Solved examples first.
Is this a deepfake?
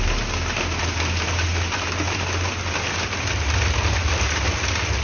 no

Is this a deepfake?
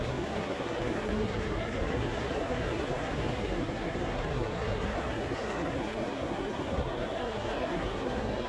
yes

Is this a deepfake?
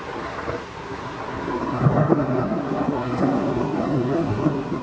yes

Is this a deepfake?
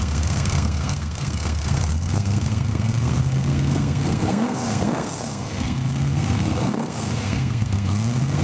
yes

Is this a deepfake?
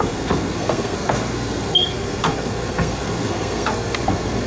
yes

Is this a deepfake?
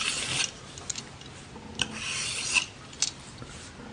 no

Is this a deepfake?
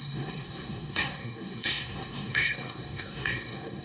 yes